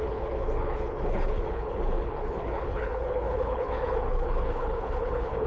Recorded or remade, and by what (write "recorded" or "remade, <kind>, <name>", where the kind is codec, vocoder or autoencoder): remade, codec, HILCodec